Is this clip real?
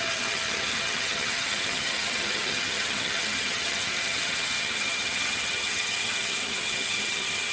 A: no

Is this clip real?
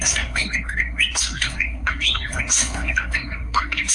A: no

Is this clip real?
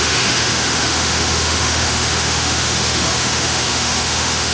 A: no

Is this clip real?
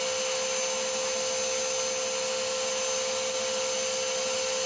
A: yes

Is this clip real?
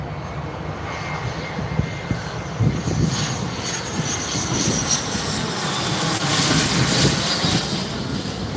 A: yes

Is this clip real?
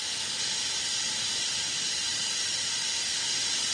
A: yes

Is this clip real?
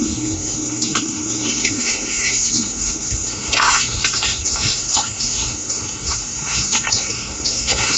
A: no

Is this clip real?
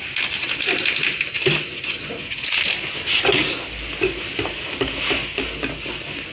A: yes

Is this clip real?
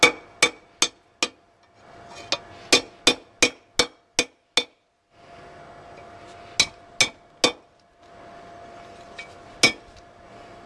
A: yes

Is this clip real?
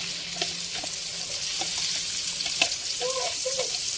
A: yes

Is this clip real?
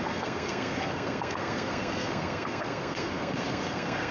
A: no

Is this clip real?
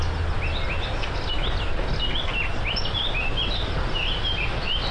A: yes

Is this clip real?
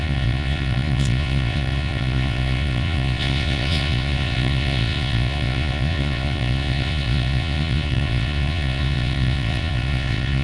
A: no